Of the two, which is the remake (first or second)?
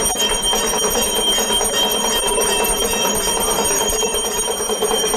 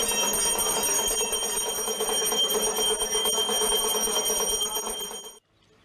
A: first